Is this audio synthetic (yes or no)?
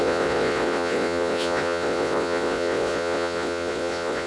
yes